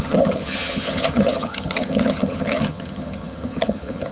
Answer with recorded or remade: remade